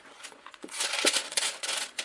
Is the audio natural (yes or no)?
no